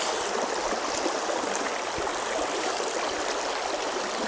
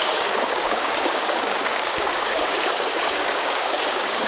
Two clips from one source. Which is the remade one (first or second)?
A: second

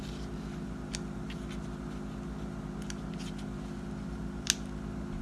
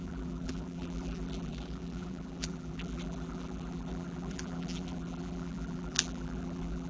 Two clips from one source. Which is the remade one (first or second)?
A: second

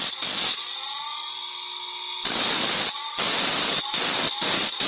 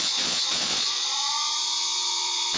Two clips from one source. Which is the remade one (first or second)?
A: second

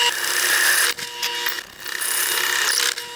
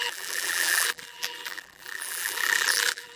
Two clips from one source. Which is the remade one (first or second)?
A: second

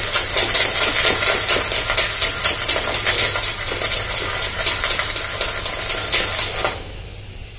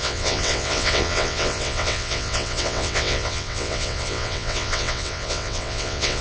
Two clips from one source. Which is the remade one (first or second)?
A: second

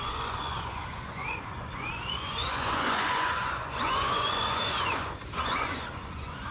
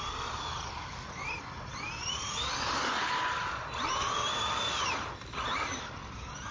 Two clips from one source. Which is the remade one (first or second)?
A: first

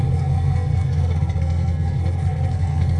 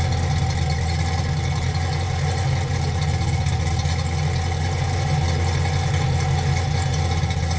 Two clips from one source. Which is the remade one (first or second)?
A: first